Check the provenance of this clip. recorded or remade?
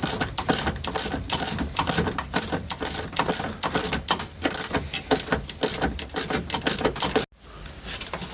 recorded